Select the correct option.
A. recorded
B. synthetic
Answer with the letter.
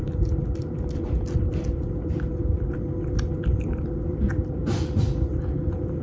A